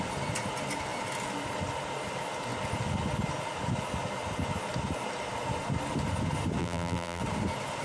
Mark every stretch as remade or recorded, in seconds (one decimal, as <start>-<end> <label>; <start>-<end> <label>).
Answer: 0.0-6.6 recorded; 6.6-7.2 remade; 7.2-7.8 recorded